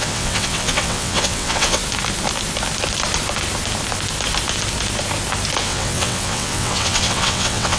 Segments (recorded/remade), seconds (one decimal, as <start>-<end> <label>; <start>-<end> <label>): 0.0-1.8 remade; 1.8-5.6 recorded; 5.6-7.8 remade